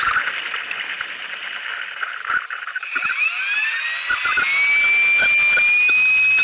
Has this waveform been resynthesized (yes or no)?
no